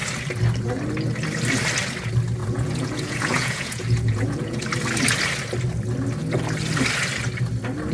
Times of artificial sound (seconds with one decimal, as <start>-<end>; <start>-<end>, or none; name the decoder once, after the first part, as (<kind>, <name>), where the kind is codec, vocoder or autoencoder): 2.4-4.6 (vocoder, Vocos)